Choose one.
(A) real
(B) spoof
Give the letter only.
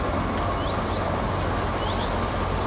A